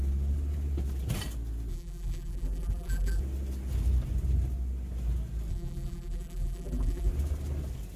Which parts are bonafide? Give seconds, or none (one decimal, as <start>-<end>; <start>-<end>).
0.0-1.7; 3.2-5.5; 7.1-8.0